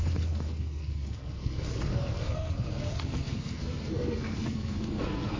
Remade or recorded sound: remade